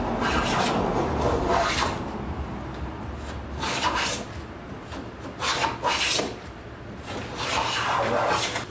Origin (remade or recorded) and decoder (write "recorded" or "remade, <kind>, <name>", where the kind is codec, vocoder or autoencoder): recorded